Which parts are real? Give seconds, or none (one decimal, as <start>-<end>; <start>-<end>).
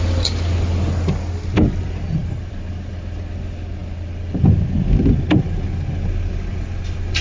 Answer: 0.0-2.2; 2.9-7.2